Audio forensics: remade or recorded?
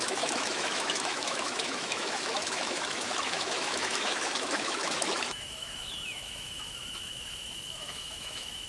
remade